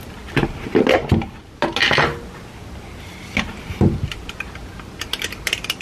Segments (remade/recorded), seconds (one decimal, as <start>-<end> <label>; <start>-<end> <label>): 0.0-5.8 recorded